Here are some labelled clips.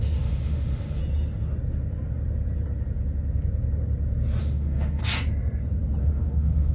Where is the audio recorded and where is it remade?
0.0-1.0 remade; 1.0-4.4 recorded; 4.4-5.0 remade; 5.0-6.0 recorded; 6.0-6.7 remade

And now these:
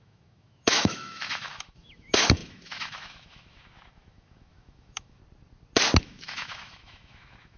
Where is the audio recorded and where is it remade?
0.0-5.2 remade; 5.2-6.0 recorded; 6.0-7.6 remade

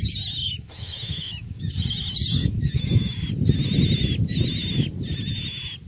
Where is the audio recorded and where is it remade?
0.0-0.4 recorded; 0.4-1.7 remade; 1.7-2.4 recorded; 2.4-3.1 remade; 3.1-5.9 recorded

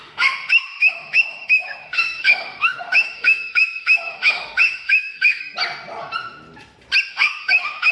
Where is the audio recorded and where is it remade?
0.0-5.4 remade; 5.4-7.1 recorded; 7.1-7.9 remade

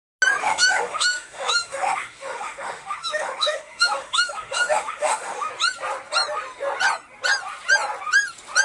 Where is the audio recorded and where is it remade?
0.0-0.4 recorded; 0.4-5.5 remade; 5.5-8.6 recorded